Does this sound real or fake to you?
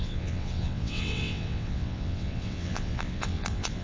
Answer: fake